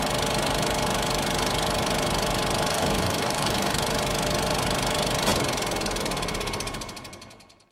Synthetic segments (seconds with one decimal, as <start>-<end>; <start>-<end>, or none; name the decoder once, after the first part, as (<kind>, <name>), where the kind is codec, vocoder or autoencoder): 2.7-3.8 (codec, DAC)